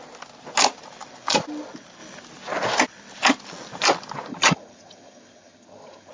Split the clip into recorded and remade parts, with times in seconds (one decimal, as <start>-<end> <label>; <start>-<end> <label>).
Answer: 0.0-4.3 recorded; 4.3-6.1 remade